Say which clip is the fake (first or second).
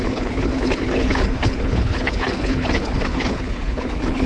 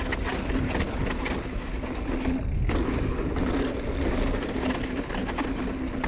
first